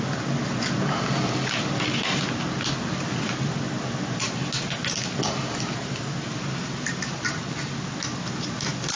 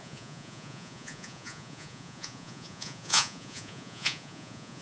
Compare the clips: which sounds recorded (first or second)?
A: first